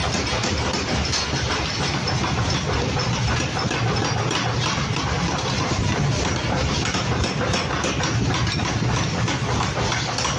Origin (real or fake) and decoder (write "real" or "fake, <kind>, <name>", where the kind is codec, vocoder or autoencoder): real